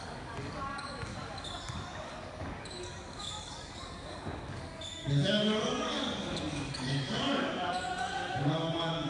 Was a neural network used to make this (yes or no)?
yes